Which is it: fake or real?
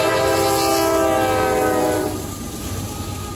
real